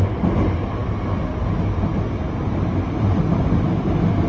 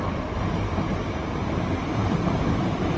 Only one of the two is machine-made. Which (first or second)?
second